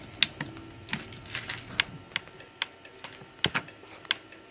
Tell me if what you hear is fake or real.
real